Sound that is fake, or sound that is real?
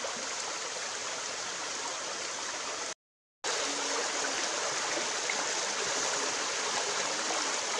real